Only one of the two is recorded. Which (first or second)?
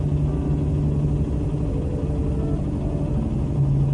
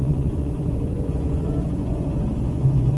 first